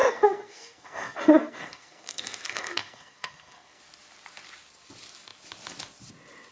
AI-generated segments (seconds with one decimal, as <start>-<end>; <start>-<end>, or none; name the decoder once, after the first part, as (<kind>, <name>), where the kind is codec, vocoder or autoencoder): 0.0-3.8 (codec, SNAC)